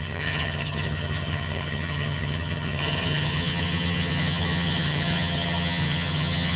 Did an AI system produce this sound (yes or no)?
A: yes